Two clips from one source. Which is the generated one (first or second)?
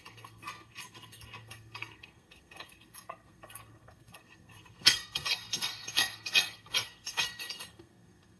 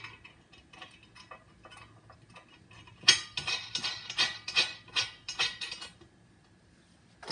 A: first